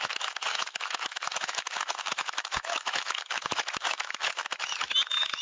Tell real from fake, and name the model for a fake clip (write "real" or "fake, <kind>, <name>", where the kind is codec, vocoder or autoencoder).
fake, autoencoder, DAC-VAE